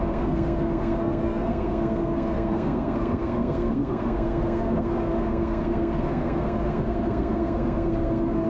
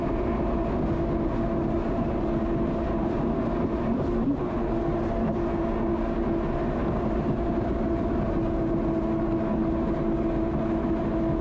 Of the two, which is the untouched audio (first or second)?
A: second